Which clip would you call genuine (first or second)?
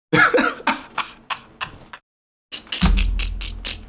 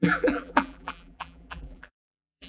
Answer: first